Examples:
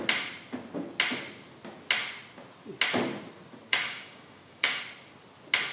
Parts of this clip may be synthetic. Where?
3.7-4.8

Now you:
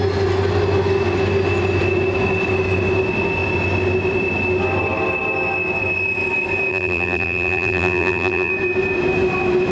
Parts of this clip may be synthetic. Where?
6.7-8.5